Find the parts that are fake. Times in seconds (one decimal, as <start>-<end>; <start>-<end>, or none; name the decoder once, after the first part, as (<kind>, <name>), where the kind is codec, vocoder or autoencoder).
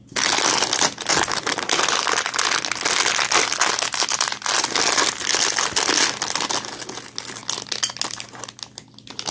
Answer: none